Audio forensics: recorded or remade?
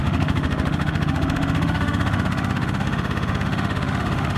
remade